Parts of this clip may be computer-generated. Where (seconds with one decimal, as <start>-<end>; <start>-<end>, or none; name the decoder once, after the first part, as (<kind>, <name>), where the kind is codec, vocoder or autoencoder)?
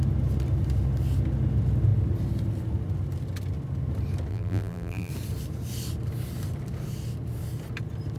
4.3-5.1 (vocoder, BigVGAN v2)